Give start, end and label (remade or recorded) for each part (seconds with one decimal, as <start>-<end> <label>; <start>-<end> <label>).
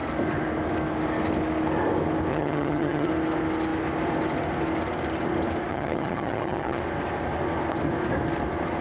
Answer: 0.0-2.3 recorded; 2.3-3.1 remade; 3.1-5.7 recorded; 5.7-6.8 remade; 6.8-8.8 recorded